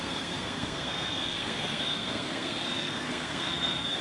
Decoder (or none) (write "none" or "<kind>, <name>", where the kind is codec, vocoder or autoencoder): codec, SNAC